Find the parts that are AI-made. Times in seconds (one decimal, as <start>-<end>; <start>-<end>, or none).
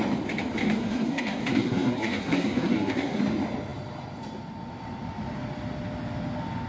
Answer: 0.6-3.2